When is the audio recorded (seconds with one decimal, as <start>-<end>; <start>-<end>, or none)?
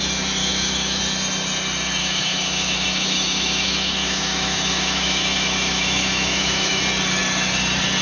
0.0-0.4; 1.0-2.0; 6.8-8.0